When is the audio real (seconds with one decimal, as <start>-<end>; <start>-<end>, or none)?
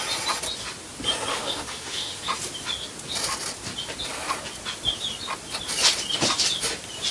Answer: 0.0-1.3; 2.2-7.1